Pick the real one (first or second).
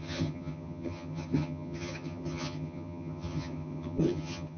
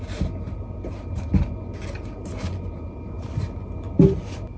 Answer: second